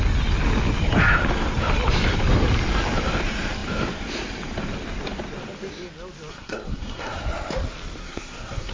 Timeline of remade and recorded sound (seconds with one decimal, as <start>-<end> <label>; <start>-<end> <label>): 0.0-6.3 recorded; 6.3-7.2 remade; 7.2-8.0 recorded; 8.0-8.7 remade